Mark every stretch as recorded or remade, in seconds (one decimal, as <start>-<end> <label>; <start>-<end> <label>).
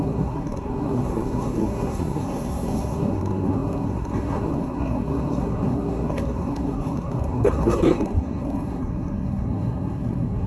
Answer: 0.0-10.5 remade